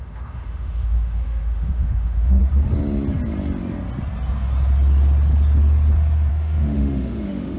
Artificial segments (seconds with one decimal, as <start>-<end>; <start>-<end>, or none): 0.0-2.4; 6.3-7.6